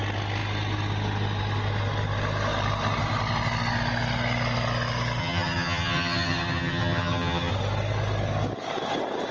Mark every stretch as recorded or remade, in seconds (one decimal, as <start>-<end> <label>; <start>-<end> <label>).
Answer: 0.0-5.2 recorded; 5.2-7.5 remade; 7.5-9.3 recorded